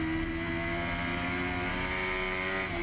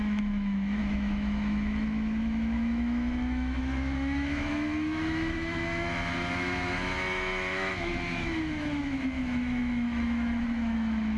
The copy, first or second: second